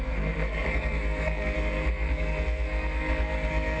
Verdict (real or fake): fake